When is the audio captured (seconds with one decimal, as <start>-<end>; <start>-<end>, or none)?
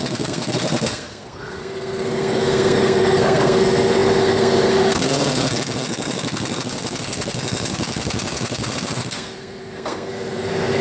none